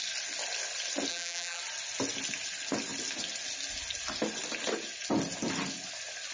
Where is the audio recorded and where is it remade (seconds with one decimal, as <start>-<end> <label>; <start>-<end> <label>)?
0.0-1.1 recorded; 1.1-1.6 remade; 1.6-6.3 recorded